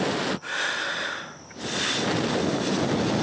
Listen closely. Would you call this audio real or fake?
real